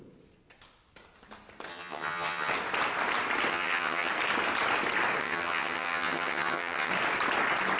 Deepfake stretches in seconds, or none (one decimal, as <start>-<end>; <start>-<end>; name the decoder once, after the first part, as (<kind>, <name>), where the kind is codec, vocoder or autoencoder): 1.7-2.5 (vocoder, HiFi-GAN); 3.5-4.1; 5.2-6.9